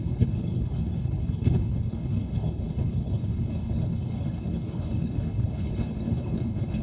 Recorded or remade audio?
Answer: remade